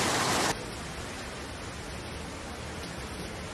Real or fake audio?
real